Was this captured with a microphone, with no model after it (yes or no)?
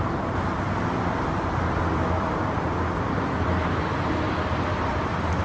no